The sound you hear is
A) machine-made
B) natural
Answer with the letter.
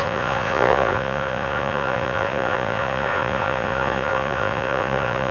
A